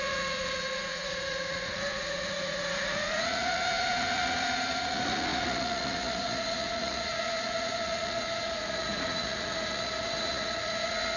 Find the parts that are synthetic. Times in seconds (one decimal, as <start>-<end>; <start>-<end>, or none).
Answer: 0.0-11.2